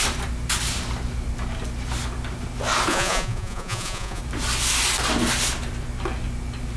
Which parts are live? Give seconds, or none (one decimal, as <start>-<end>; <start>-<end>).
0.0-2.9; 4.2-6.8